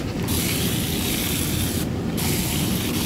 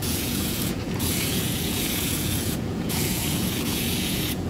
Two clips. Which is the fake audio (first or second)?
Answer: second